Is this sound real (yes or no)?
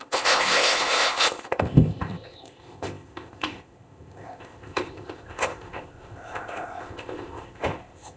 no